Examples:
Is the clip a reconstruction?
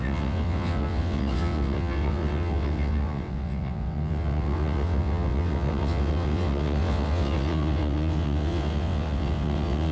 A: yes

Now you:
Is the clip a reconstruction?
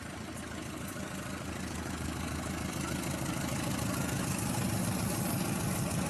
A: no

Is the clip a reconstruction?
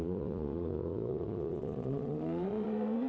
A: yes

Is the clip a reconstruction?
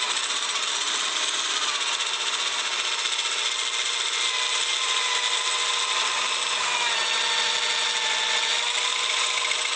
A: no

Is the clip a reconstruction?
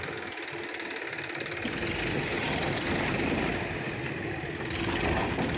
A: no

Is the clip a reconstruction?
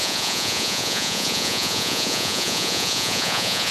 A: yes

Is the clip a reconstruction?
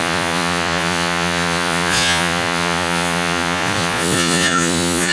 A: yes